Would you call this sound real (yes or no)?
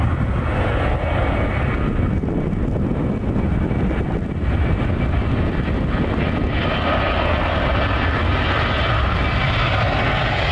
yes